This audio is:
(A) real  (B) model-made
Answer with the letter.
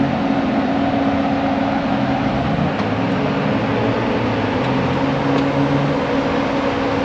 A